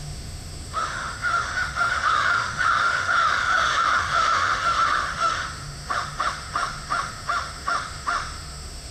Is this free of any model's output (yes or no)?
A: no